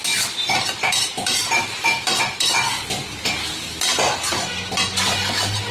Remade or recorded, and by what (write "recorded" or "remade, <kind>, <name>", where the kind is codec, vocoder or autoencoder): recorded